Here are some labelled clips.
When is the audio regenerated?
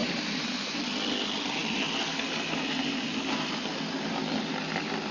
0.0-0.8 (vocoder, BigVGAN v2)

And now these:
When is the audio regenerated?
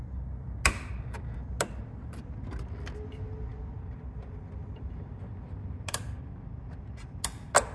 none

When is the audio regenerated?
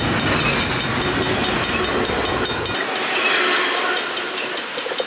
none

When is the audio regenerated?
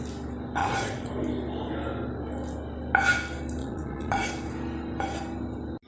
0.6-1.1 (vocoder, Vocos); 3.6-4.3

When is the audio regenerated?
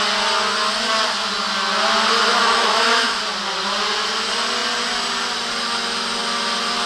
2.3-3.2 (autoencoder, DAC-VAE)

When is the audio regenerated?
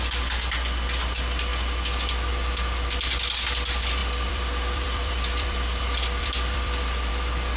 4.0-7.1 (vocoder, BigVGAN v2)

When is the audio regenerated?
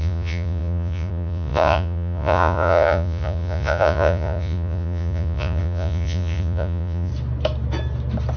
0.0-7.1 (vocoder, Vocos)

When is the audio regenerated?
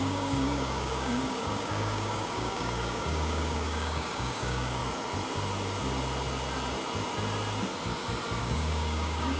0.0-4.8 (codec, DAC); 8.4-9.4